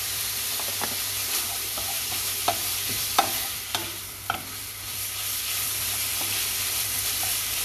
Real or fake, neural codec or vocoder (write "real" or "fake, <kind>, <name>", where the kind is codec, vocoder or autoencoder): fake, vocoder, BigVGAN v2